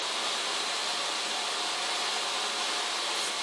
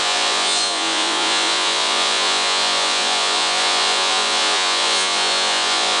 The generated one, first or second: second